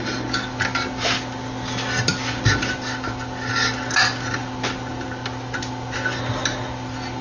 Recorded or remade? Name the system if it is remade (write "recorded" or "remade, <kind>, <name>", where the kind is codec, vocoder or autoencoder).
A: recorded